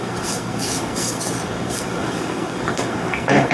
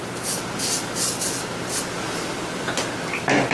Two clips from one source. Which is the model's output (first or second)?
first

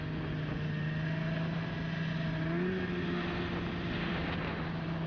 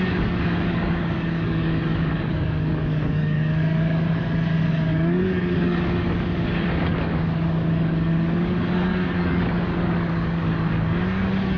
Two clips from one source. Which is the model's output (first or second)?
second